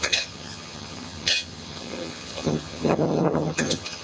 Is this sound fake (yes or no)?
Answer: yes